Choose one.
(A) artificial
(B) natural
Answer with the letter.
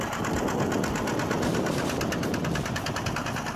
B